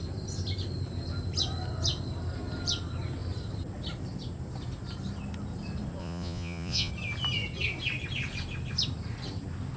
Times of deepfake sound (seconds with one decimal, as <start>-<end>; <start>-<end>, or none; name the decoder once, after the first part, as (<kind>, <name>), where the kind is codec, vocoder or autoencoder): 6.0-6.9 (vocoder, Vocos)